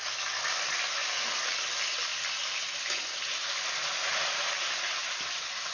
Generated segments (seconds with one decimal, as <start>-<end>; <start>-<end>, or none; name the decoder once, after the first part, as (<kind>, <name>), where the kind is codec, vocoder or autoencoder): none